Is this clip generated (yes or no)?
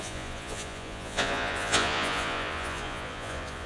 yes